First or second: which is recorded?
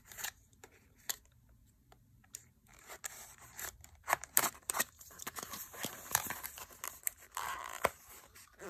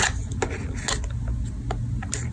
second